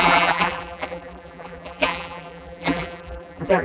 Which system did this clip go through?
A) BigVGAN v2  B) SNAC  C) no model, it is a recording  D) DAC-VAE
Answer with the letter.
A